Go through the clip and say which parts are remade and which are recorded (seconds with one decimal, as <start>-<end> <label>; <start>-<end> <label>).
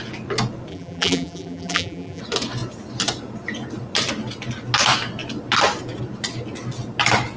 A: 0.0-0.7 recorded; 0.7-2.2 remade; 2.2-7.4 recorded